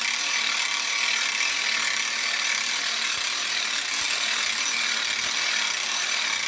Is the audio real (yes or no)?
yes